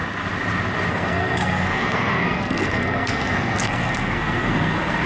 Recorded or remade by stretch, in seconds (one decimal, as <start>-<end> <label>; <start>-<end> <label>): 0.0-0.9 recorded; 0.9-5.1 remade